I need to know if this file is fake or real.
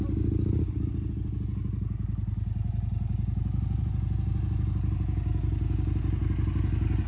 real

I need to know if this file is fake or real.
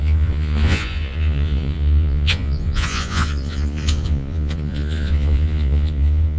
fake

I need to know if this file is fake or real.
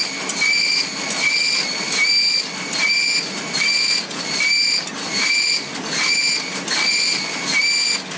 real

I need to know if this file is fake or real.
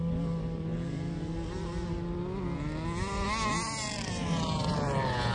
real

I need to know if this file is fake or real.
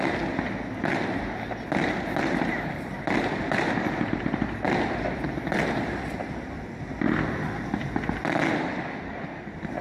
real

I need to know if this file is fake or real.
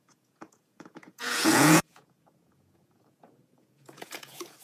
fake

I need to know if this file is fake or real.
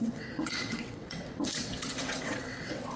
fake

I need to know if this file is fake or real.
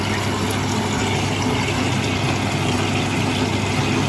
real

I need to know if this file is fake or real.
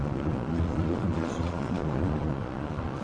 fake